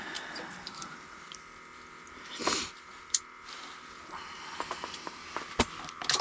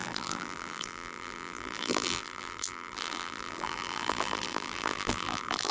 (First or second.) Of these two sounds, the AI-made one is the second